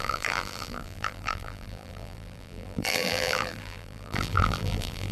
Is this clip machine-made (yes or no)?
yes